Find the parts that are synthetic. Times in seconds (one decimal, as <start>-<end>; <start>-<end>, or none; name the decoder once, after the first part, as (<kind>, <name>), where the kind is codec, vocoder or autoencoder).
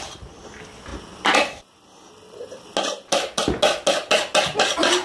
none